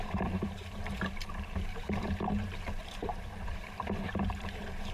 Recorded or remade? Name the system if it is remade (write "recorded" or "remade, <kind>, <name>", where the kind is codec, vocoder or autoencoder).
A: remade, vocoder, BigVGAN v2